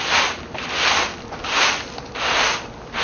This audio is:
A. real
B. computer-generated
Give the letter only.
A